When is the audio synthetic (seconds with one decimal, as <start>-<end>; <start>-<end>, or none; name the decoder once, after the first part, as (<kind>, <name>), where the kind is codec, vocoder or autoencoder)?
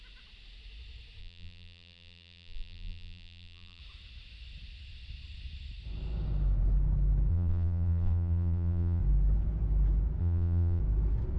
1.2-3.8 (vocoder, BigVGAN v2); 7.3-9.0; 10.2-10.8